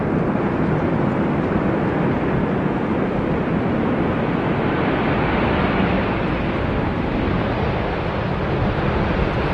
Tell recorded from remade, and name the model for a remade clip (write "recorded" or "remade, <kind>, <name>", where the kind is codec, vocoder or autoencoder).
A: recorded